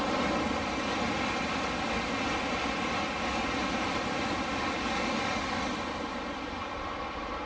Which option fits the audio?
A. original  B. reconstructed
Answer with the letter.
A